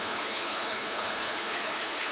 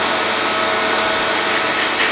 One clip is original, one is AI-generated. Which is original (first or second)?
second